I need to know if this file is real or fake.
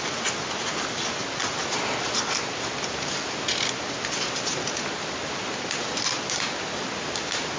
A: real